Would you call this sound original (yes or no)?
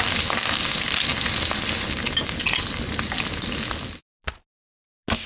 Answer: yes